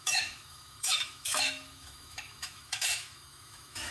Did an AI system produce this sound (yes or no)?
yes